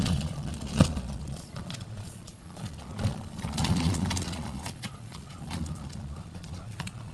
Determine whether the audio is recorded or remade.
remade